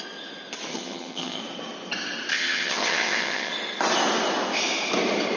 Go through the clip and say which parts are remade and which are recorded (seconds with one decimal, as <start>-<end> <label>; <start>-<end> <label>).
0.0-0.7 recorded; 0.7-1.4 remade; 1.4-2.3 recorded; 2.3-3.5 remade; 3.5-5.4 recorded